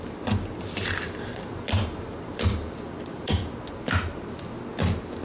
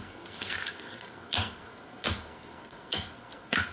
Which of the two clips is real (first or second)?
first